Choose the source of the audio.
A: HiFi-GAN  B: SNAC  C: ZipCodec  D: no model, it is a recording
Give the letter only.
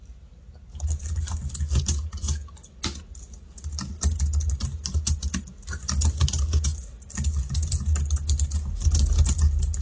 D